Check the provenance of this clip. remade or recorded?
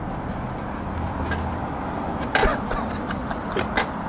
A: recorded